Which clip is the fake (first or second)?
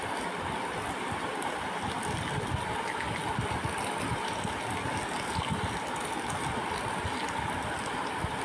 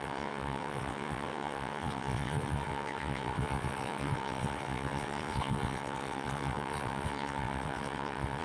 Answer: second